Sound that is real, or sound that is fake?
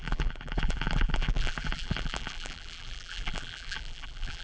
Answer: fake